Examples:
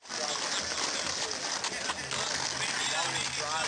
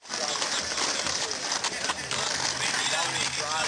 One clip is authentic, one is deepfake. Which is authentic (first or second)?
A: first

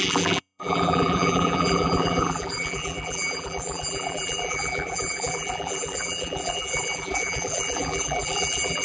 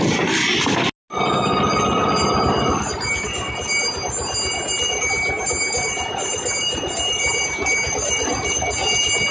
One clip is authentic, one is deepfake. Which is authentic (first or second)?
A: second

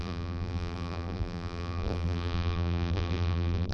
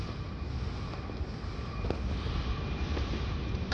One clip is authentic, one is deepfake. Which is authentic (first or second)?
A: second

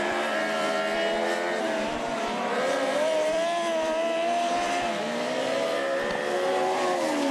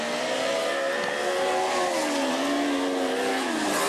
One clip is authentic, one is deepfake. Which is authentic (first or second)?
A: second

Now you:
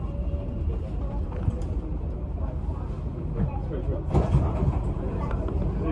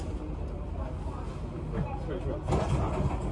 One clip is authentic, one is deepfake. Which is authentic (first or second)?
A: second